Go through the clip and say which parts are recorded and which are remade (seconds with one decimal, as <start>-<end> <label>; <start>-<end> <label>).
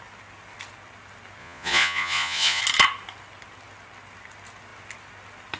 0.0-1.4 recorded; 1.4-2.6 remade; 2.6-5.6 recorded